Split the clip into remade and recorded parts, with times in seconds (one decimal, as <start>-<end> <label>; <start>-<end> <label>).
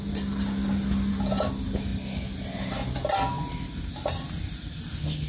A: 0.0-5.3 recorded